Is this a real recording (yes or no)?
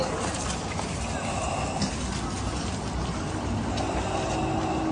yes